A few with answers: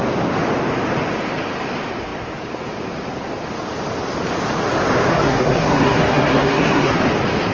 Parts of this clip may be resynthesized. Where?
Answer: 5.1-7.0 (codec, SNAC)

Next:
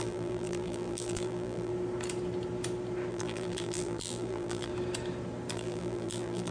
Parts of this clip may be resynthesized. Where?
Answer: 0.0-1.7 (vocoder, BigVGAN v2); 3.1-4.7; 5.5-6.5

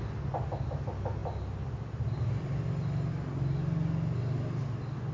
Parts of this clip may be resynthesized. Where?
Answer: none

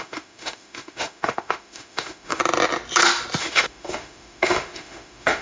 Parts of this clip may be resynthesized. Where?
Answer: 0.0-2.4 (autoencoder, DAC-VAE); 3.4-5.4

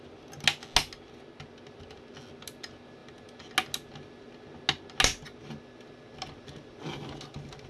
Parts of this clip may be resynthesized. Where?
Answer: none